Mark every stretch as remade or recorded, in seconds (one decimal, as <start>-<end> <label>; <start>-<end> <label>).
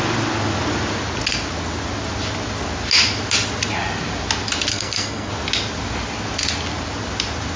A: 0.0-4.7 recorded; 4.7-5.3 remade; 5.3-7.6 recorded